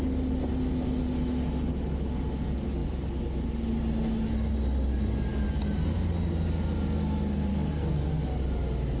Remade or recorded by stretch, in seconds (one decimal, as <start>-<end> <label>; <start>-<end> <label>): 0.0-7.5 recorded; 7.5-8.1 remade; 8.1-9.0 recorded